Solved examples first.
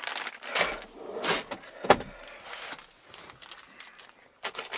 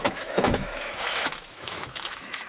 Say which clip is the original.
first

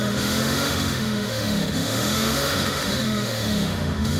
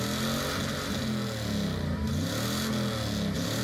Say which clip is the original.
second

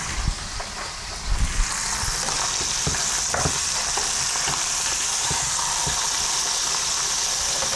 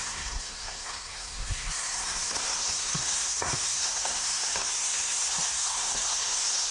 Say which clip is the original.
first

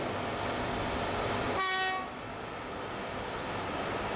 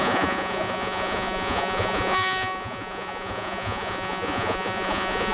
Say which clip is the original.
first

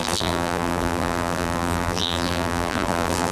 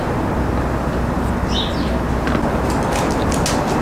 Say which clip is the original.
second